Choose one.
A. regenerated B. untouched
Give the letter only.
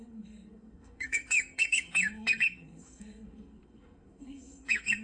A